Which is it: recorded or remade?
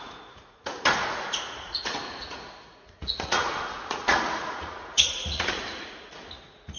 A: remade